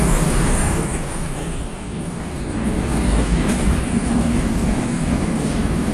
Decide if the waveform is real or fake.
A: fake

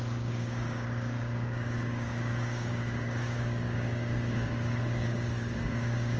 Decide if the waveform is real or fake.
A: fake